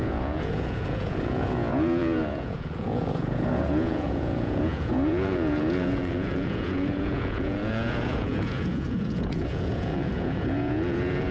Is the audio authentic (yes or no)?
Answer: no